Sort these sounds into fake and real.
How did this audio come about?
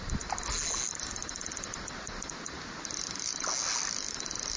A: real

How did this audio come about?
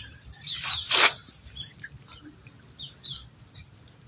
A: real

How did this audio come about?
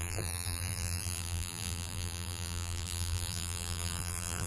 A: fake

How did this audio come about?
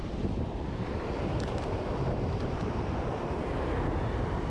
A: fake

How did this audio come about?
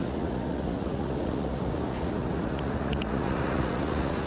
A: fake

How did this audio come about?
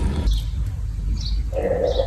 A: real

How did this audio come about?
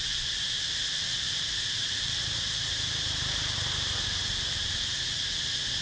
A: fake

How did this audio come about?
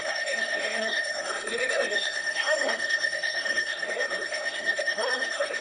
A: fake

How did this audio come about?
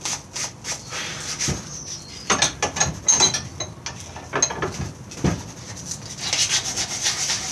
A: real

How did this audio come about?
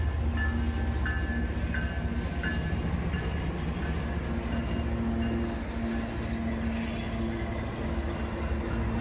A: real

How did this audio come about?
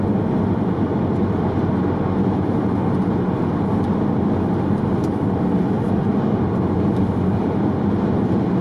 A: real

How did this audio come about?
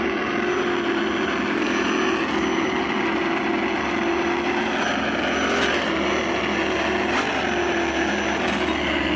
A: real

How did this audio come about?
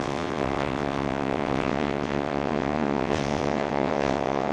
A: fake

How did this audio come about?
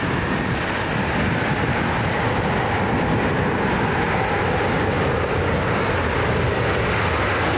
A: real